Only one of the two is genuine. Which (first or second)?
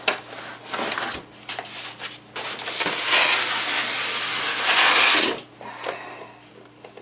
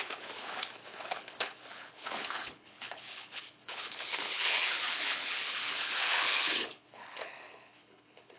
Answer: first